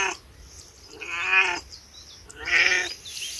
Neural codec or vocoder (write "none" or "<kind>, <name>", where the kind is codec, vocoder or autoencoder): none